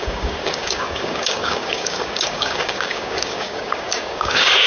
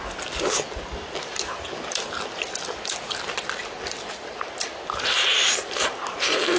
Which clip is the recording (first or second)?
second